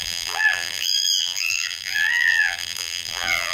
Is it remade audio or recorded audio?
remade